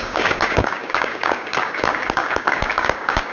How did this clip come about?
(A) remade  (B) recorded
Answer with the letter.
A